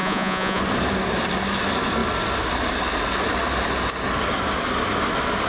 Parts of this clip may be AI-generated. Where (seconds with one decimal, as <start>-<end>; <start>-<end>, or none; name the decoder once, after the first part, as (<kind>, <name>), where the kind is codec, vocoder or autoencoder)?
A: 0.0-0.6 (vocoder, Vocos)